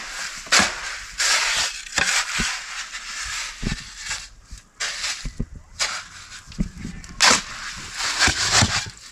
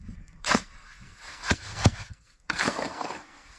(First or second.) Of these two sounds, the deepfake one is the second